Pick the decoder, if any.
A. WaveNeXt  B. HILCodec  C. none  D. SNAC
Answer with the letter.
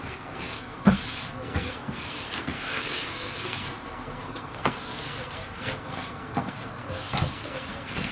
D